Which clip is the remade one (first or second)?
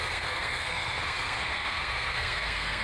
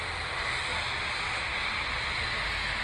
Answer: first